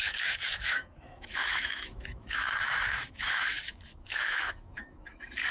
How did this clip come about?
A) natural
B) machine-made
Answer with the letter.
B